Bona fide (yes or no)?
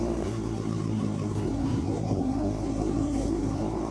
no